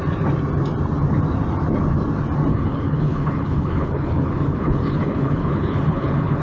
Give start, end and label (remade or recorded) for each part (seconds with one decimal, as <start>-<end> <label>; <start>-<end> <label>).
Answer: 0.0-2.5 recorded; 2.5-6.4 remade